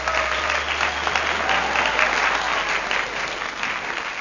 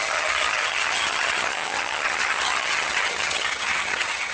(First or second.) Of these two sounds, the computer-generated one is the second